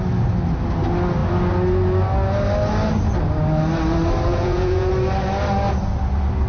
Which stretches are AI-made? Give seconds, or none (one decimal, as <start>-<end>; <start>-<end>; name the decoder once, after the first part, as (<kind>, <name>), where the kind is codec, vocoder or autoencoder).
4.3-4.9 (vocoder, Vocos)